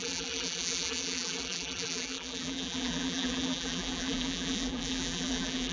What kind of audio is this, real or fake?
fake